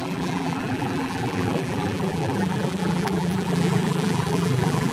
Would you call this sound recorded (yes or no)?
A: no